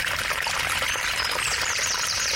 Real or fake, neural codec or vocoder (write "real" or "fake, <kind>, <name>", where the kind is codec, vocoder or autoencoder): fake, vocoder, BigVGAN v2